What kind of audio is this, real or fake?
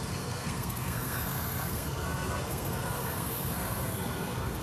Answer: fake